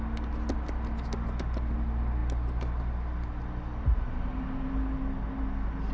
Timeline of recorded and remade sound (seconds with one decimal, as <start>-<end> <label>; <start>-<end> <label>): 0.0-5.9 recorded